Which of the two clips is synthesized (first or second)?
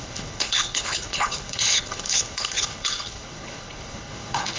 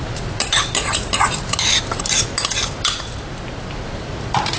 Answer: first